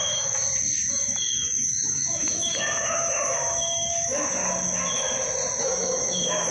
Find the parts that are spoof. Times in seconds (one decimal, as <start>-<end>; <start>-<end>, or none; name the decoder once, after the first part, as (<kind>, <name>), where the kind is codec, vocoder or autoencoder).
0.0-0.4 (autoencoder, DAC-VAE); 0.9-4.4; 5.6-6.5